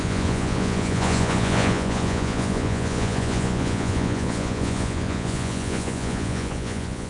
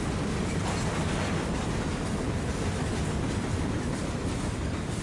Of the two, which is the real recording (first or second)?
second